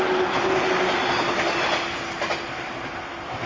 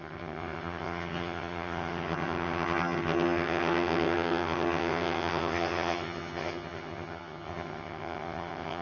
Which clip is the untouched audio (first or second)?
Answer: first